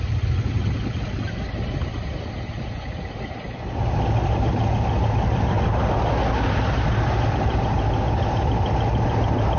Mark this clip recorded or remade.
recorded